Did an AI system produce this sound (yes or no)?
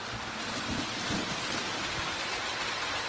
no